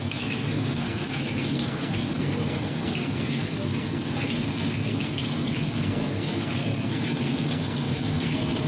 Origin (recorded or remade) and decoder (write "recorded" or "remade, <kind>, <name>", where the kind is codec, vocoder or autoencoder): remade, codec, SNAC